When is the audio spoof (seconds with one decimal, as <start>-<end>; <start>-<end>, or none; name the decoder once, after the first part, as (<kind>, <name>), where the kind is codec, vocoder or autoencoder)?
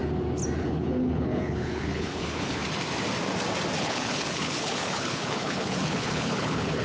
0.6-2.6 (codec, HILCodec); 3.8-6.8